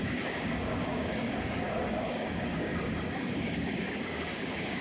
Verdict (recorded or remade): remade